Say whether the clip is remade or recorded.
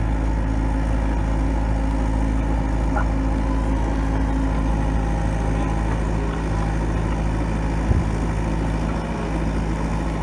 recorded